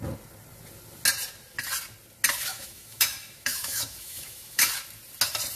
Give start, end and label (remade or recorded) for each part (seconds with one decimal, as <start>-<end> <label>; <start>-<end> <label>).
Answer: 0.0-2.5 recorded; 2.5-4.7 remade; 4.7-5.6 recorded